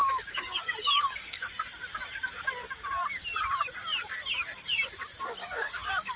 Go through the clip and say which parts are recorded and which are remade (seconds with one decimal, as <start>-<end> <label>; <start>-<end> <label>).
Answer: 0.0-1.4 remade; 1.4-5.4 recorded; 5.4-6.2 remade